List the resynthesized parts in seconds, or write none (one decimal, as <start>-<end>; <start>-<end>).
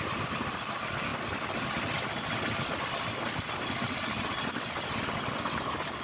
none